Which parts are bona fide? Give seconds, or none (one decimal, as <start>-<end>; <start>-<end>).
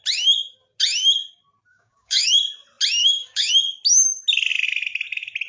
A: 0.0-1.7; 2.3-3.0; 3.5-5.5